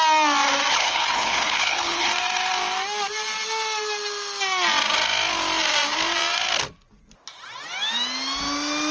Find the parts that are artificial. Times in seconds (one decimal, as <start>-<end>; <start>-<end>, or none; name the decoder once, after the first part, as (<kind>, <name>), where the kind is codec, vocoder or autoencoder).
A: 0.7-2.1 (codec, HILCodec)